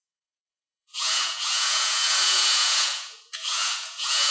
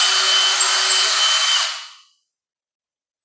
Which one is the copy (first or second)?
first